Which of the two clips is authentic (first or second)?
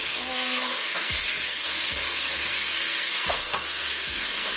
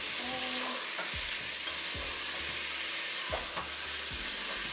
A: second